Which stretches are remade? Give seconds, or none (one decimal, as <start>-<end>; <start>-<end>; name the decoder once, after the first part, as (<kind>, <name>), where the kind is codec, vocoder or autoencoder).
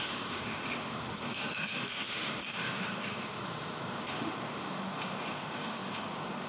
0.0-6.5 (autoencoder, DAC-VAE)